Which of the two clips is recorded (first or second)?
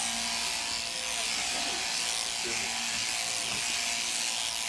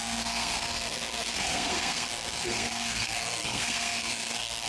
first